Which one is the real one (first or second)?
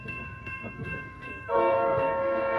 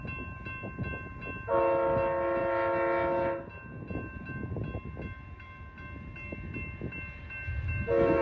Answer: second